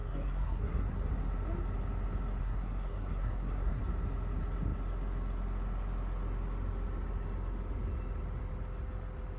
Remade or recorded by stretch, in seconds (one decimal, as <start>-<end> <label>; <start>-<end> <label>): 0.0-1.1 remade; 1.1-2.4 recorded; 2.4-3.8 remade; 3.8-9.4 recorded